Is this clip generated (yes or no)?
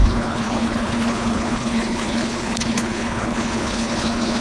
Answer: yes